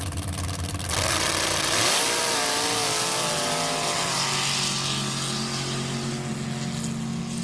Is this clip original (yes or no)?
yes